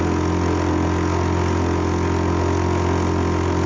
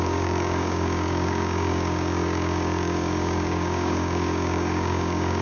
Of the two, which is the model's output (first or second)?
second